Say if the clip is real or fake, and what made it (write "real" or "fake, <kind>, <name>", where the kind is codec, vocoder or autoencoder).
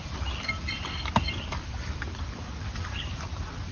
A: real